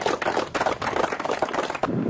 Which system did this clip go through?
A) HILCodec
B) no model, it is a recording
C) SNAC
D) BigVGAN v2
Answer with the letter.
B